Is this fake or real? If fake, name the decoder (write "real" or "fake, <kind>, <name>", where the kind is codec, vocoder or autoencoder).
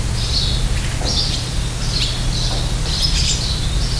real